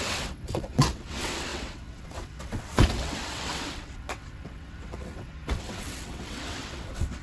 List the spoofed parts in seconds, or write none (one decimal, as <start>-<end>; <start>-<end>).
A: 0.0-7.2